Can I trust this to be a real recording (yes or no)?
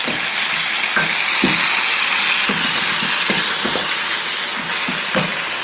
yes